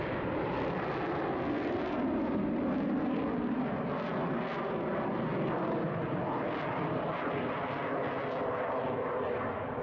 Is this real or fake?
real